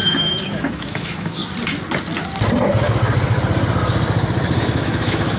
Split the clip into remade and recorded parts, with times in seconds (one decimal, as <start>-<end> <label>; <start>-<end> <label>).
0.0-1.4 remade; 1.4-4.6 recorded; 4.6-5.4 remade